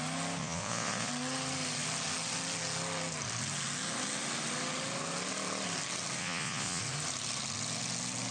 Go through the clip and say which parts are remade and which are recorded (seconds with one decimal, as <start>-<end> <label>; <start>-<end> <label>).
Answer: 0.0-0.4 recorded; 0.4-1.1 remade; 1.1-6.2 recorded; 6.2-6.8 remade; 6.8-8.3 recorded